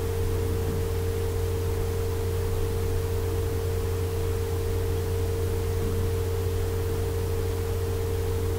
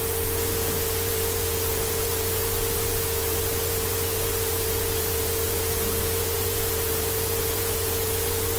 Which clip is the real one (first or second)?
first